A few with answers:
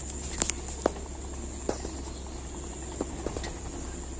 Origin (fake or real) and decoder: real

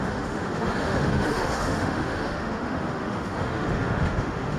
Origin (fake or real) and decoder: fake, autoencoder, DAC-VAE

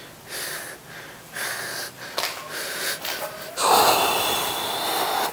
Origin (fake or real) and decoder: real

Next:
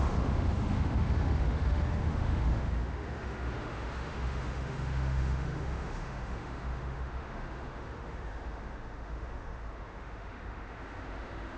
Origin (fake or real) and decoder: fake, autoencoder, DAC-VAE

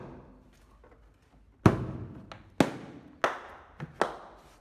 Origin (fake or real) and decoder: real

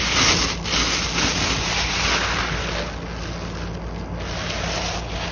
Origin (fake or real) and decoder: real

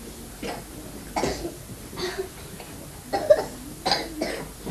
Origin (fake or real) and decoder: real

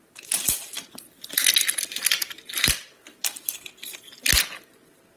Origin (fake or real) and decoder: real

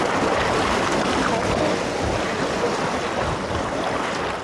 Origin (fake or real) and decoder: real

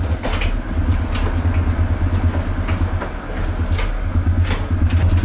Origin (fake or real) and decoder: real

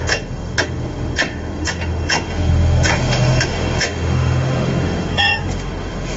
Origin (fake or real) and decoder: fake, autoencoder, DAC-VAE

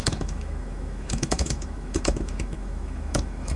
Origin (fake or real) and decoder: fake, autoencoder, DAC-VAE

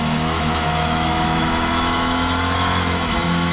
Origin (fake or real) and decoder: fake, autoencoder, DAC-VAE